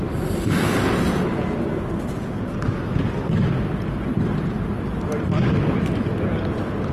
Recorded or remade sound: recorded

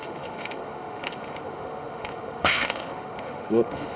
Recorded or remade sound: remade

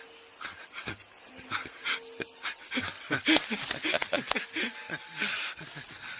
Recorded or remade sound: recorded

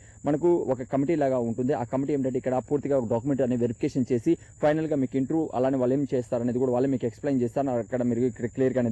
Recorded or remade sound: recorded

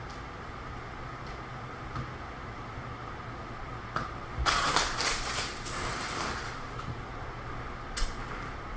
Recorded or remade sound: recorded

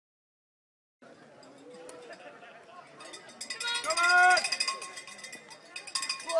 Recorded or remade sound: recorded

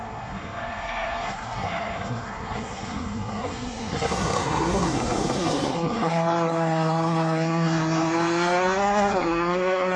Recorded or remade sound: remade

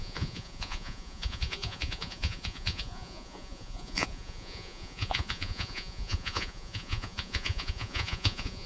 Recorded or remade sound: remade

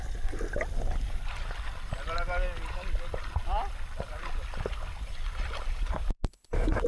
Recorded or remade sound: recorded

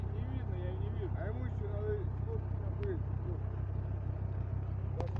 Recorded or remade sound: recorded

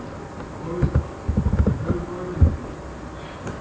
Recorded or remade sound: recorded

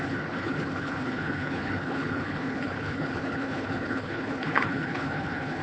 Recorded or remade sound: remade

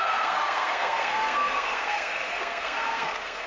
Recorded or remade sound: remade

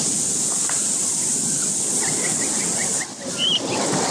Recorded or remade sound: recorded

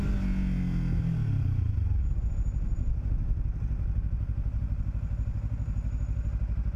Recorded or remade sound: recorded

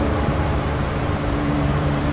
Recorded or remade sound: remade